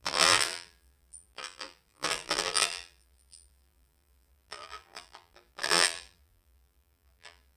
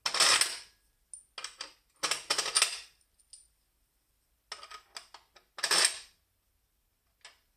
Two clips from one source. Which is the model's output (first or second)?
first